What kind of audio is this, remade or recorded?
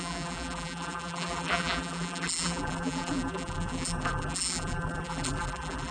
remade